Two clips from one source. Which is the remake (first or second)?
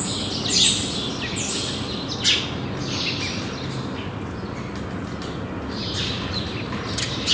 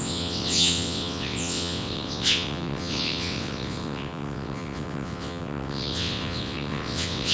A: second